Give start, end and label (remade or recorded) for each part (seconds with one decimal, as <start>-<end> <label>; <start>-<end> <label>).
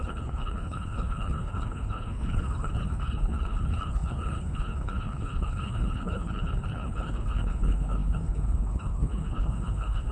0.0-10.1 remade